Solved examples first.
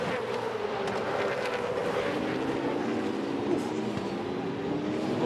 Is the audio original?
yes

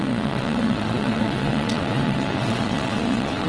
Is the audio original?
no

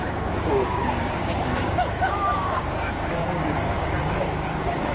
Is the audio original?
no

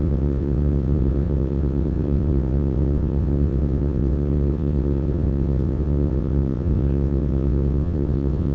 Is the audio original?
no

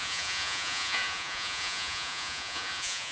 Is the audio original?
no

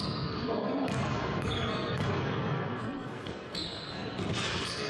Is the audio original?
no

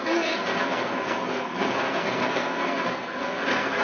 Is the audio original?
no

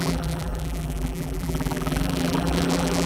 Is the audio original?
no